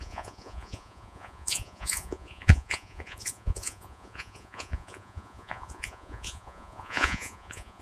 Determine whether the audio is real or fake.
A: fake